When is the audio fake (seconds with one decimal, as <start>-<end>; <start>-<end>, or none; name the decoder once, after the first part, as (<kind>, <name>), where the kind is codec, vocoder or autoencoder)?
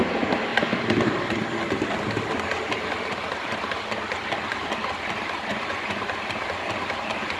5.5-6.0 (vocoder, Vocos)